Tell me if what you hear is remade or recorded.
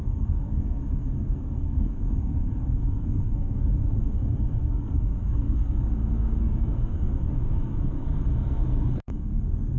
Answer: remade